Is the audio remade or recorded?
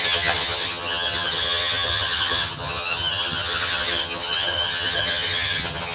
remade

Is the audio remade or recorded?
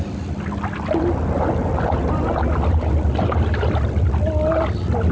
recorded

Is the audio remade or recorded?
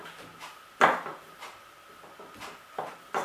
recorded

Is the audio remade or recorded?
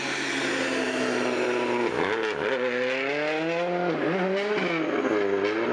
recorded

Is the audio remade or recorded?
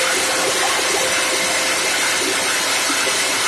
recorded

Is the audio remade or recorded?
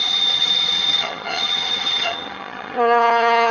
remade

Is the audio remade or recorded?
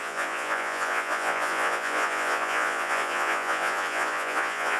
remade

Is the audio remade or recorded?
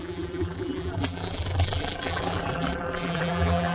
remade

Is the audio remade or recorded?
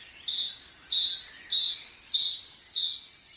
recorded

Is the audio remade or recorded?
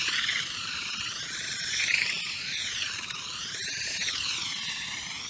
remade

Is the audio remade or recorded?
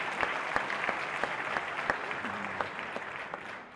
remade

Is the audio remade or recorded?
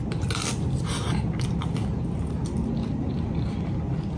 recorded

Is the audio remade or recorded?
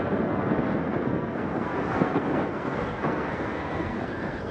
remade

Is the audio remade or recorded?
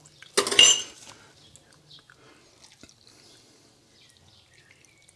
recorded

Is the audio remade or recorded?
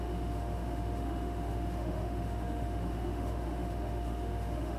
remade